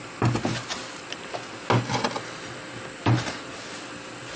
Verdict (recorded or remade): recorded